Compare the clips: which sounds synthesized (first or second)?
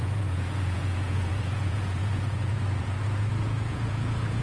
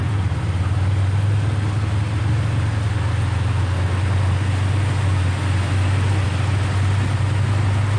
first